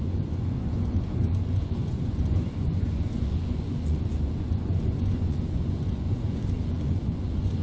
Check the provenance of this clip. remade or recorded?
remade